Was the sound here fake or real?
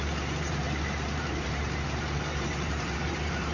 fake